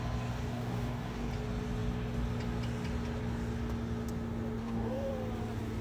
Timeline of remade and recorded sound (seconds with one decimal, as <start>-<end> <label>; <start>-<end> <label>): 0.0-0.4 recorded; 0.4-1.3 remade; 1.3-4.6 recorded; 4.6-5.1 remade; 5.1-5.8 recorded